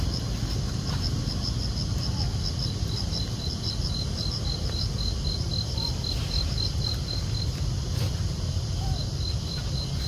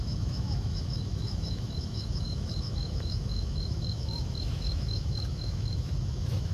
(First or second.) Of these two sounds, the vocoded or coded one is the second